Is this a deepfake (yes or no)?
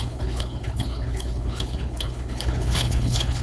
yes